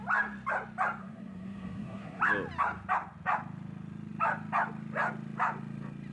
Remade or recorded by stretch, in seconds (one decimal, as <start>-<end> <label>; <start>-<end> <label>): 0.0-1.0 recorded; 1.0-2.2 remade; 2.2-6.1 recorded